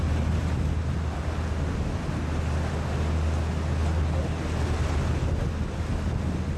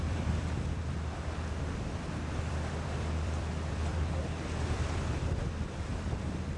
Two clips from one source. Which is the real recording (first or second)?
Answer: first